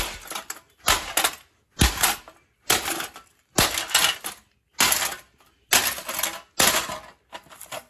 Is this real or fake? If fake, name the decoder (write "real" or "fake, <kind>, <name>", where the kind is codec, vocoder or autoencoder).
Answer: real